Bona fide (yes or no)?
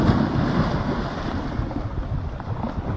yes